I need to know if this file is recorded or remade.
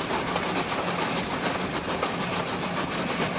recorded